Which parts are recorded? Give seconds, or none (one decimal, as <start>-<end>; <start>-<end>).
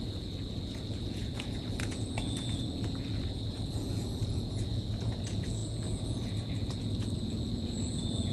none